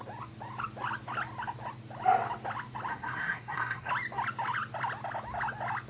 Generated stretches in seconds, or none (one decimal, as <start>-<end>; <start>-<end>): 2.9-3.9